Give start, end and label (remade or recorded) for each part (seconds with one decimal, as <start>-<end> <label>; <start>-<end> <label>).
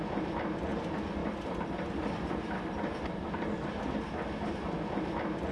0.0-5.5 recorded